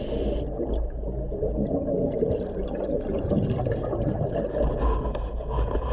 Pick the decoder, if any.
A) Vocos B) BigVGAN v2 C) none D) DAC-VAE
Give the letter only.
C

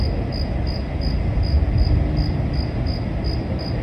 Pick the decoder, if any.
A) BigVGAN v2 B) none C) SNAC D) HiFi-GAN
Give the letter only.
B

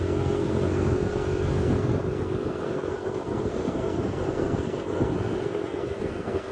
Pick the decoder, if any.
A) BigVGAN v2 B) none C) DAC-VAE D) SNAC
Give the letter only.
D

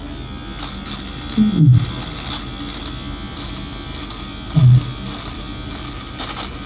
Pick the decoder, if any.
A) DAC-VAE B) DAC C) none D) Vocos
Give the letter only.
C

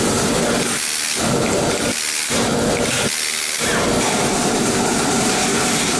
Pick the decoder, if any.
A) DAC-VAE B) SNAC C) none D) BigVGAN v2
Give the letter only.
C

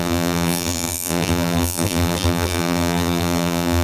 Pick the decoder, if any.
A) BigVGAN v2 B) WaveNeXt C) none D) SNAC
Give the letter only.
A